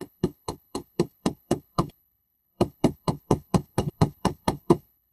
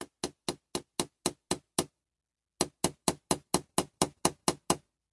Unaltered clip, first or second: second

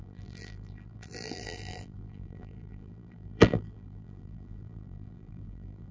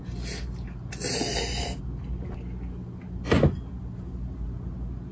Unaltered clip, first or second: second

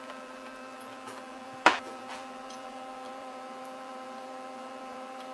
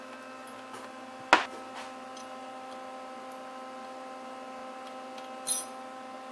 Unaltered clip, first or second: second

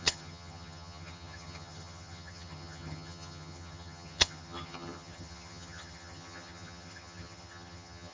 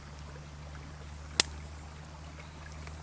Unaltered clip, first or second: second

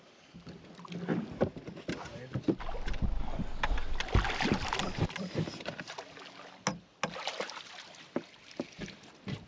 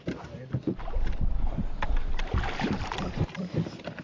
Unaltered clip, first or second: first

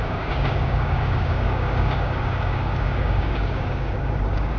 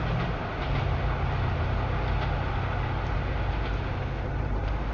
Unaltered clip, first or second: second